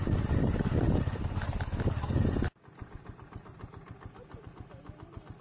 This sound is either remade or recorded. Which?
recorded